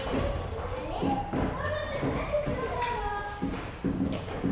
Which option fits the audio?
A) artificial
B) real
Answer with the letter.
B